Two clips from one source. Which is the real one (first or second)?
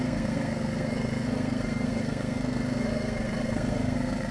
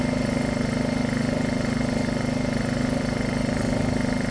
second